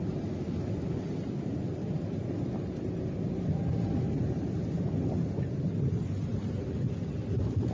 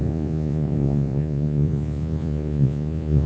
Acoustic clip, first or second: first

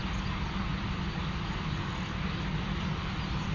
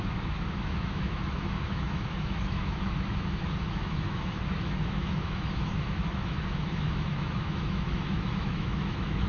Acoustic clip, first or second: first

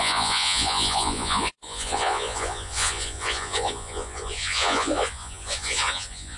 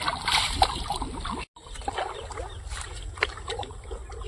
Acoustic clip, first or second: second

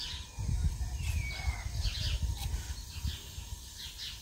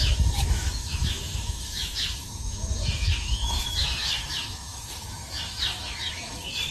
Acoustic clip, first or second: first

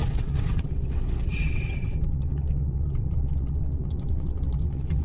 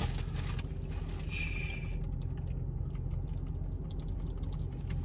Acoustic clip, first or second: second